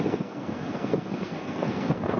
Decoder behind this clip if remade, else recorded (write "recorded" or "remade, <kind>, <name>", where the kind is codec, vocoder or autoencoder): remade, codec, SNAC